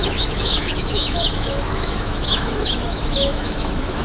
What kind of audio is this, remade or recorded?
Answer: remade